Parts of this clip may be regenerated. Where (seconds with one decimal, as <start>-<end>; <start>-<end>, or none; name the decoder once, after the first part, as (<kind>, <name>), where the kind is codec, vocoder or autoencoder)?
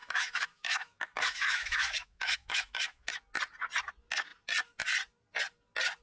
0.0-3.1 (autoencoder, DAC-VAE)